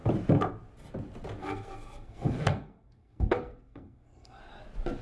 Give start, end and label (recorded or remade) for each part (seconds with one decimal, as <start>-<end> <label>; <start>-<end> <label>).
0.0-1.4 recorded; 1.4-4.4 remade; 4.4-5.0 recorded